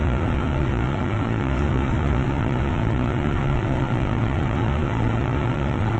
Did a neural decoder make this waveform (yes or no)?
yes